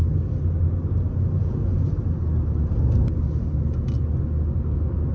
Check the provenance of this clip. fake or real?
real